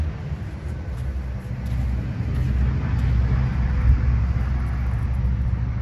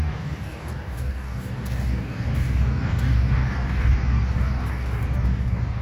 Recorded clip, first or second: first